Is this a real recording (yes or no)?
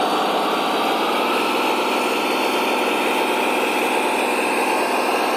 yes